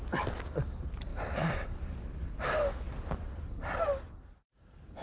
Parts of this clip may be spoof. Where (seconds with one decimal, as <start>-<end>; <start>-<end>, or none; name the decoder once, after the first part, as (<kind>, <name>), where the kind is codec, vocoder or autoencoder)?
1.1-3.8 (vocoder, BigVGAN v2)